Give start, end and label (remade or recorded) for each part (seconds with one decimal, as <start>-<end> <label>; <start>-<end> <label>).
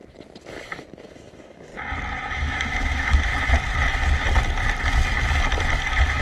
0.0-1.0 recorded; 1.0-1.7 remade; 1.7-2.3 recorded; 2.3-3.3 remade; 3.3-6.2 recorded